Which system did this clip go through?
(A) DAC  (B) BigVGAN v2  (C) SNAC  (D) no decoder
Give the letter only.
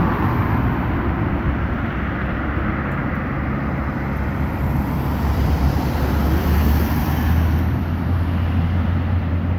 B